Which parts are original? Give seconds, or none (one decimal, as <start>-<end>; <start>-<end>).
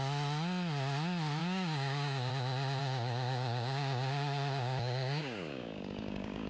0.0-1.4; 2.3-2.8